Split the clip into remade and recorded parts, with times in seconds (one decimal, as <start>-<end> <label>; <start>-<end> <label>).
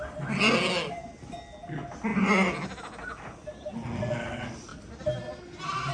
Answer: 0.0-5.9 recorded